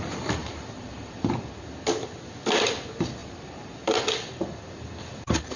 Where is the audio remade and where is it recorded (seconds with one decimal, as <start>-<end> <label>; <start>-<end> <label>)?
0.0-0.4 recorded; 0.4-1.3 remade; 1.3-3.2 recorded; 3.2-4.0 remade; 4.0-5.6 recorded